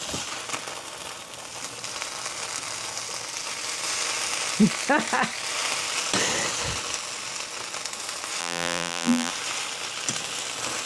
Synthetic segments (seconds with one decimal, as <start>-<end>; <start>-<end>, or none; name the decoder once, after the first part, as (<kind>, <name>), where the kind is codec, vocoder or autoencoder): 8.4-9.3 (vocoder, BigVGAN v2)